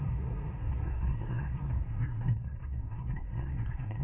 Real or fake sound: fake